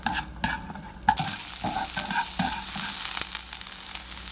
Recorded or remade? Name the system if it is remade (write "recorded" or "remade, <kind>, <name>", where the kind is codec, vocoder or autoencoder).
recorded